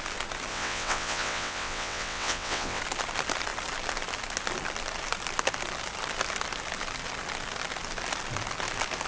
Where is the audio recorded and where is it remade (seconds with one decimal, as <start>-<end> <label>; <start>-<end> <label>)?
0.0-0.5 recorded; 0.5-2.8 remade; 2.8-9.1 recorded

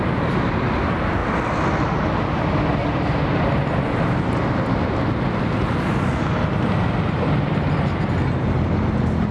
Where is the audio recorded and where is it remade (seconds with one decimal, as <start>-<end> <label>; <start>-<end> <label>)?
0.0-9.3 recorded

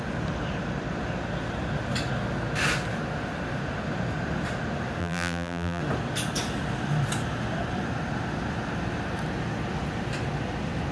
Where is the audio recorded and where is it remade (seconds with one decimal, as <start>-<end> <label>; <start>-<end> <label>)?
0.0-5.0 recorded; 5.0-5.8 remade; 5.8-10.9 recorded

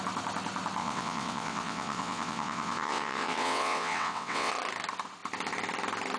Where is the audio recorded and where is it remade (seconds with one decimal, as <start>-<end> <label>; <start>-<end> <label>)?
0.0-0.8 recorded; 0.8-4.5 remade; 4.5-6.2 recorded

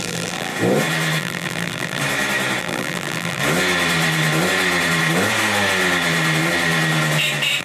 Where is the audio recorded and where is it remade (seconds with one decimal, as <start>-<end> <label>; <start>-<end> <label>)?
0.0-0.5 remade; 0.5-1.2 recorded; 1.2-2.0 remade; 2.0-2.6 recorded; 2.6-3.4 remade; 3.4-7.6 recorded

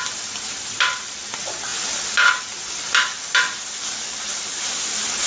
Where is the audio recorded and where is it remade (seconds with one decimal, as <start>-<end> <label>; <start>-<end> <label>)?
0.0-5.3 recorded

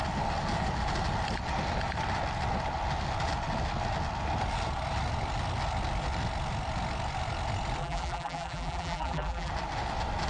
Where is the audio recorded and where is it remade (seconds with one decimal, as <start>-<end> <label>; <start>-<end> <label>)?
0.0-7.8 recorded; 7.8-9.5 remade; 9.5-10.3 recorded

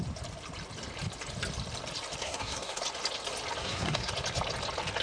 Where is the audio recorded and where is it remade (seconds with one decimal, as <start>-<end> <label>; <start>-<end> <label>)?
0.0-2.2 recorded; 2.2-2.8 remade; 2.8-3.6 recorded; 3.6-4.1 remade; 4.1-5.0 recorded